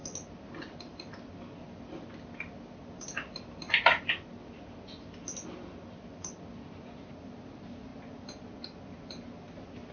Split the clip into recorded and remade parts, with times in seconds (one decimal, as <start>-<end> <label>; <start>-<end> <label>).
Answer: 0.0-9.9 recorded